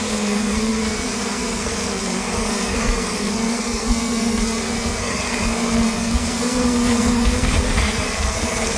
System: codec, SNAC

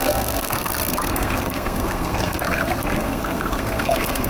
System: codec, SNAC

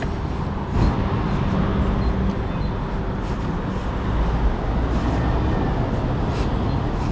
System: none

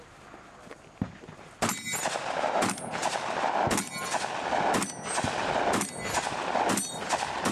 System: none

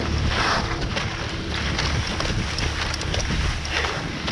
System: none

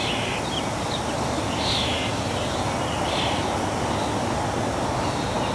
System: none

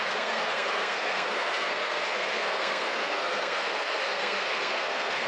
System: codec, SNAC